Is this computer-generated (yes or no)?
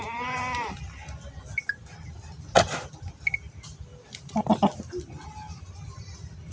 no